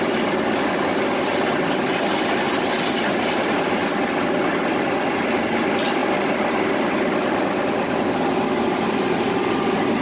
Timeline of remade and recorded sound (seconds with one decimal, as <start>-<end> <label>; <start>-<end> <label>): 0.0-10.0 recorded